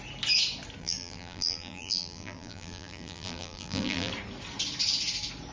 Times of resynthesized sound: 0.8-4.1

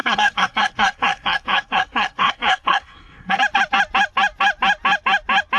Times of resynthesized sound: 0.0-3.4